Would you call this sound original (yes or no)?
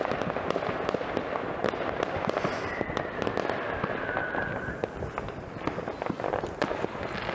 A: yes